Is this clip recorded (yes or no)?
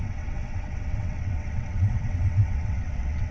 no